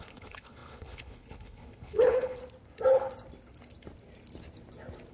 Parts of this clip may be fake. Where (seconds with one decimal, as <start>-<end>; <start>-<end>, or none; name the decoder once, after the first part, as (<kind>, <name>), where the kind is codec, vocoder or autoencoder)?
0.0-2.4 (codec, HILCodec)